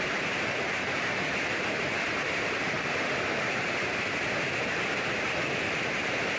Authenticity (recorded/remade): remade